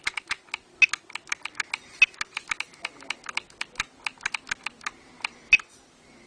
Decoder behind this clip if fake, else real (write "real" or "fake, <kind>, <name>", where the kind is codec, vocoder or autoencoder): real